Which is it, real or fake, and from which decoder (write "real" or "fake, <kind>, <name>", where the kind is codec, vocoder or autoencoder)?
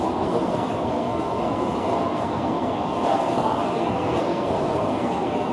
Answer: fake, codec, SNAC